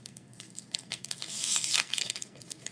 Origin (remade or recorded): remade